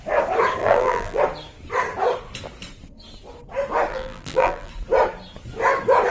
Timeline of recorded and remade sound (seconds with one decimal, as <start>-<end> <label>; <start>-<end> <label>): 0.0-0.6 recorded; 0.6-1.2 remade; 1.2-3.9 recorded; 3.9-4.7 remade; 4.7-6.1 recorded

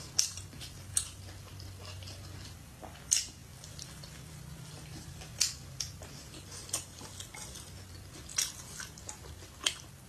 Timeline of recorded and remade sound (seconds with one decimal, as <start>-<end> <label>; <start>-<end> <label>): 0.0-10.1 recorded

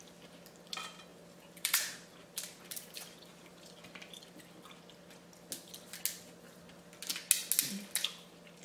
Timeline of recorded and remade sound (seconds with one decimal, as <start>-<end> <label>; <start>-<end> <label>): 0.0-1.1 recorded; 1.1-2.9 remade; 2.9-8.6 recorded

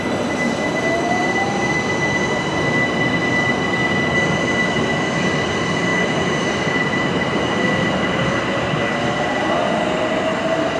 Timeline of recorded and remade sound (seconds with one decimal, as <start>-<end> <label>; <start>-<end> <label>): 0.0-5.9 recorded; 5.9-8.4 remade; 8.4-10.8 recorded

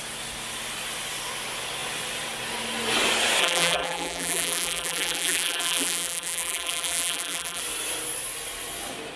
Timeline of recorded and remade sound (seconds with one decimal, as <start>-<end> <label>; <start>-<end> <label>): 0.0-3.4 recorded; 3.4-7.6 remade; 7.6-9.2 recorded